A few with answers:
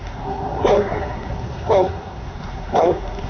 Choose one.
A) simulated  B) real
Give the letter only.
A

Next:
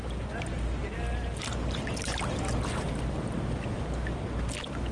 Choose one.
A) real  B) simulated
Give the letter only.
A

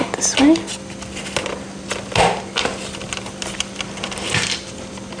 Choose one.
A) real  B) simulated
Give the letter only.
A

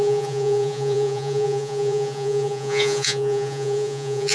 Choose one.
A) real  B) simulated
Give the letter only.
B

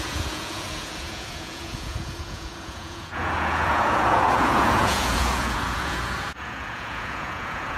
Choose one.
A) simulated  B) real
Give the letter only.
A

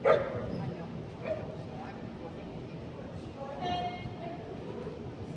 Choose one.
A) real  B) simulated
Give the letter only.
A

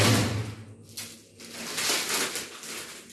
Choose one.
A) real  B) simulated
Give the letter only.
A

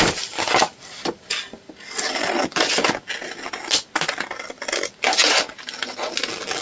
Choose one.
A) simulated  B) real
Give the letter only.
B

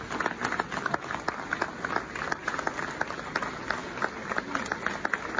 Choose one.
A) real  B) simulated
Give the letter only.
A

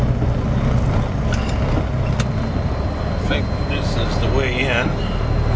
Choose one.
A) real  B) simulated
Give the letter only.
A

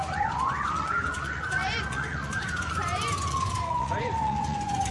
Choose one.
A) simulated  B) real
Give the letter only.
A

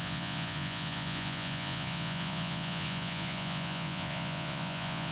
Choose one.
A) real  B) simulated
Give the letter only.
B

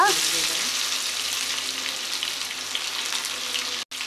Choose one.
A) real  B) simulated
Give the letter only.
A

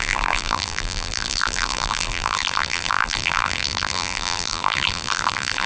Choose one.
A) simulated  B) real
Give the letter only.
A